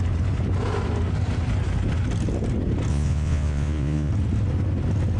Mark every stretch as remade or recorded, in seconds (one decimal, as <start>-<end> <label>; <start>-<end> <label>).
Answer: 0.0-2.9 recorded; 2.9-4.1 remade; 4.1-5.2 recorded